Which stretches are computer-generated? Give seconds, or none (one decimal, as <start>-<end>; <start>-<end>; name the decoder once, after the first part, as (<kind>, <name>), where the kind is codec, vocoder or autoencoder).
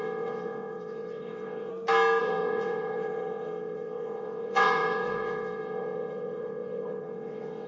0.0-1.7 (vocoder, WaveNeXt); 2.2-7.7